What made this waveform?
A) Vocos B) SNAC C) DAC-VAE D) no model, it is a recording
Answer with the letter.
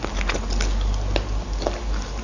D